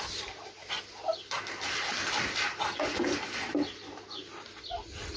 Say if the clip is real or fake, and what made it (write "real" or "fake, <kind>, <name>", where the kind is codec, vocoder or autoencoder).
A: real